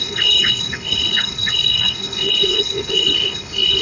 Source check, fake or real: fake